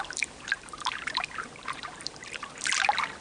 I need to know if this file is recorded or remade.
remade